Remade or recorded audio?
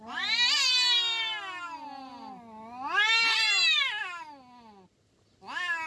recorded